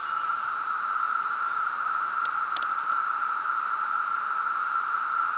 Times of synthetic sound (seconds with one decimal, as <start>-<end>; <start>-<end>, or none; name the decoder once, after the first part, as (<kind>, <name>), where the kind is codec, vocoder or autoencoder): 0.0-2.0 (vocoder, BigVGAN v2); 3.2-5.4